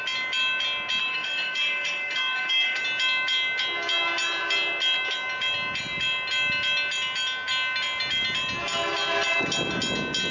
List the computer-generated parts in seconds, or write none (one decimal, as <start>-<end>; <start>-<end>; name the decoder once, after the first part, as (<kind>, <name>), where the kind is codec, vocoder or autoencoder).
1.0-2.8 (codec, DAC)